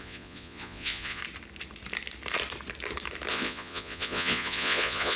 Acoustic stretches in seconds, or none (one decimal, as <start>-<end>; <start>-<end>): 1.2-3.3